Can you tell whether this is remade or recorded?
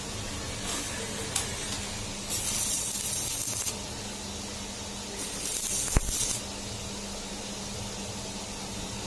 recorded